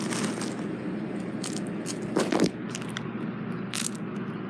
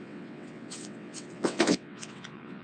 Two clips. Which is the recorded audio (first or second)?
first